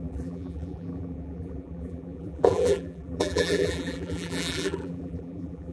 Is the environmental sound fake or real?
fake